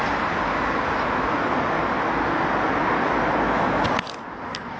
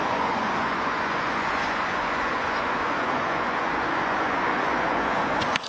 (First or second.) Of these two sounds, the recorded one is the first